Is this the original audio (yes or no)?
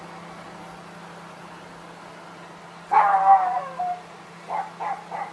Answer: yes